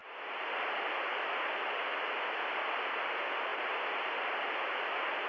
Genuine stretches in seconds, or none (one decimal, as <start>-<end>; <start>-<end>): 0.0-1.1; 3.0-5.3